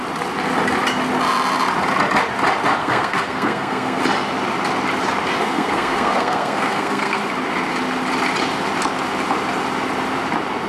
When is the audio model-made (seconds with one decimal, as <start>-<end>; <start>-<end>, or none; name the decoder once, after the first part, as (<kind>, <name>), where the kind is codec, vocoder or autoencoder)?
2.8-4.0 (codec, SNAC); 5.4-7.2